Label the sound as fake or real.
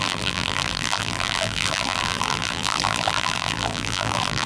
fake